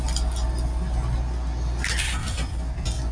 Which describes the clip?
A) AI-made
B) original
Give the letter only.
B